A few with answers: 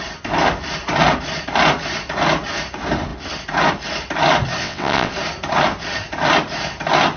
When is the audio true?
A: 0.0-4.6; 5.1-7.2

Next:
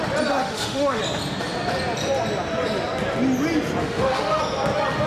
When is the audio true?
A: 0.0-0.4; 1.0-3.8; 4.4-5.1

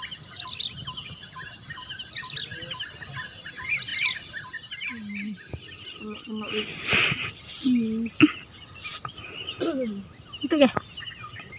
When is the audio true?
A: 0.0-11.6

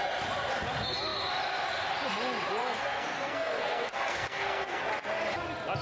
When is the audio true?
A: 0.0-2.6; 4.8-5.8

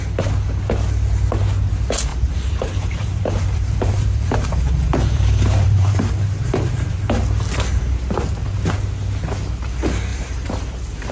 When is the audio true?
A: 0.0-2.1; 6.1-10.1

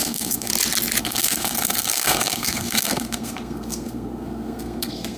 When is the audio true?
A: 0.5-1.0